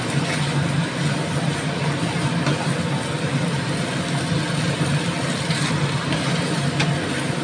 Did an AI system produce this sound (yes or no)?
no